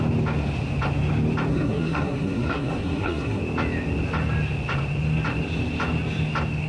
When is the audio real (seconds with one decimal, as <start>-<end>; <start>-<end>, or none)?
0.0-1.5; 3.4-6.7